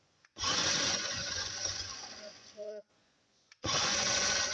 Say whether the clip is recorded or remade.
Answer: remade